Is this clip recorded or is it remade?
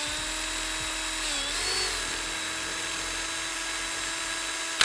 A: recorded